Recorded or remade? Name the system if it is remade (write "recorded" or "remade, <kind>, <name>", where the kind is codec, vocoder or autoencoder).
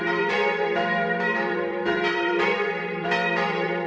remade, vocoder, BigVGAN v2